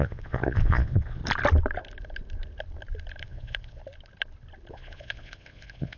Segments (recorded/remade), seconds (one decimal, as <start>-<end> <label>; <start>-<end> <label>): 0.0-1.2 remade; 1.2-3.2 recorded; 3.2-3.8 remade; 3.8-4.7 recorded; 4.7-6.0 remade